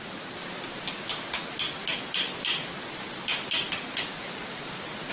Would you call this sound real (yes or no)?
yes